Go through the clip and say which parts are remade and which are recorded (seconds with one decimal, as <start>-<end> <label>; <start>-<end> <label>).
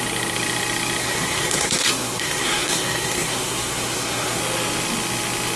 0.0-1.0 recorded; 1.0-4.4 remade; 4.4-5.6 recorded